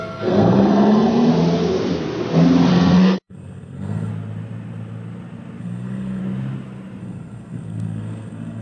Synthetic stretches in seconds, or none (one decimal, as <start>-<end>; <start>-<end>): 0.0-1.3; 2.7-4.1; 5.6-6.2; 7.0-8.6